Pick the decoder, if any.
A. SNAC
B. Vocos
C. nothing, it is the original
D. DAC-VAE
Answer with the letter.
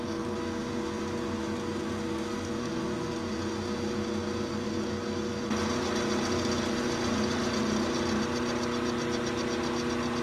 C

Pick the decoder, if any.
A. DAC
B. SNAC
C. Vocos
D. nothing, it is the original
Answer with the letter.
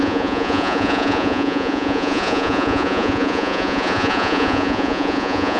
C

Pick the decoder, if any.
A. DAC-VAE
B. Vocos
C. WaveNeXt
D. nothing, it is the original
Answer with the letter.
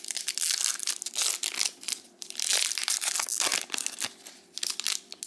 D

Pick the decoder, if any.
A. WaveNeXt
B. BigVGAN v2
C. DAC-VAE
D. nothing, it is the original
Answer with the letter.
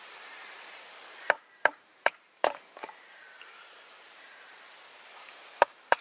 B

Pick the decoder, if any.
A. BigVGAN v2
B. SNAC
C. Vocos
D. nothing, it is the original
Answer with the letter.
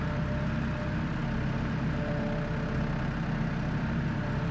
D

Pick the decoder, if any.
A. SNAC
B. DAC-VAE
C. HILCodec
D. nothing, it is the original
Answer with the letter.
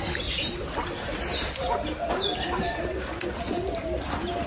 D